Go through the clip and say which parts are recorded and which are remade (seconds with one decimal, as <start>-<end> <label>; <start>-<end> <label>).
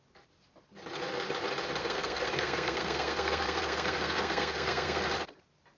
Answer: 0.0-1.8 recorded; 1.8-5.0 remade; 5.0-5.8 recorded